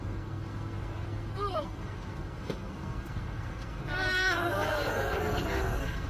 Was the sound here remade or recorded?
remade